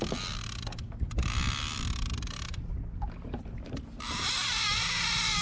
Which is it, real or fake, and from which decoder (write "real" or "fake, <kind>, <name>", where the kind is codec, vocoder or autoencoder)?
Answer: real